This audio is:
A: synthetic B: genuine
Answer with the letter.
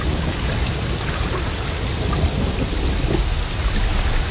B